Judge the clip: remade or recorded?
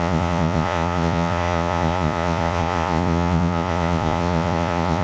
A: remade